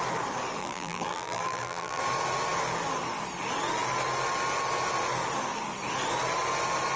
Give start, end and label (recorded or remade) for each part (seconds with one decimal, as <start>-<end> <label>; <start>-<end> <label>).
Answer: 0.0-0.6 recorded; 0.6-2.0 remade; 2.0-7.0 recorded